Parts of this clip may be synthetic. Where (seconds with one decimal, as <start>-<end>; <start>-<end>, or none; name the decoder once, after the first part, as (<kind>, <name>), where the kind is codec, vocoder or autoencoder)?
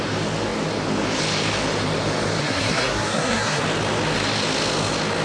2.4-3.6 (codec, SNAC)